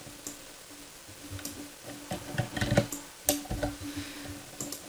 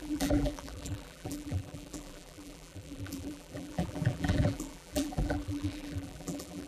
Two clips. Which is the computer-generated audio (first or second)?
second